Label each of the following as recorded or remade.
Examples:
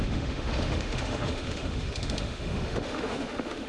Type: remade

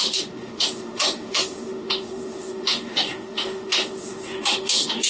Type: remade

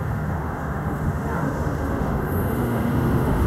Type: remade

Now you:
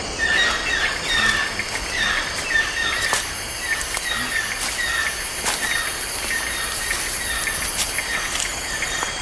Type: recorded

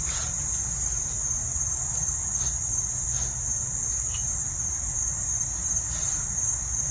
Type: recorded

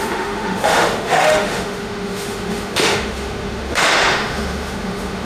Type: remade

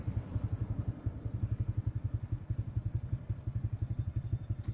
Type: recorded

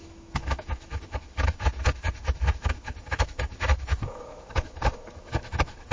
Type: remade